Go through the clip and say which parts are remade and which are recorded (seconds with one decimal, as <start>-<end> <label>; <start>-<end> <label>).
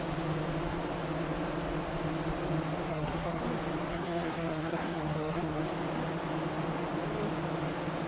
0.0-2.9 recorded; 2.9-3.4 remade; 3.4-3.9 recorded; 3.9-5.6 remade; 5.6-8.1 recorded